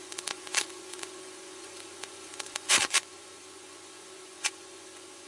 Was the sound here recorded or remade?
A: remade